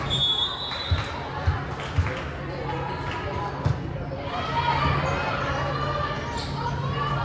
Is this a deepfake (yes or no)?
no